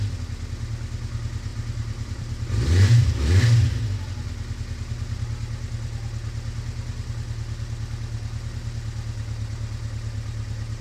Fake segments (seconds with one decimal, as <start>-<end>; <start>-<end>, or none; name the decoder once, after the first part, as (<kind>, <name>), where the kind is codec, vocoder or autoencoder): 1.5-3.4 (vocoder, BigVGAN v2)